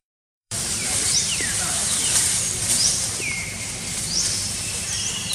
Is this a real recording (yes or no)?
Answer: no